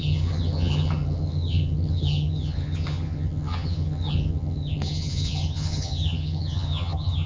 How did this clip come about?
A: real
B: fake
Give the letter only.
B